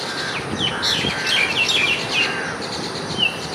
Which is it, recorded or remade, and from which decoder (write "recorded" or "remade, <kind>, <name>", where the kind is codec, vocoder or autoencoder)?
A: recorded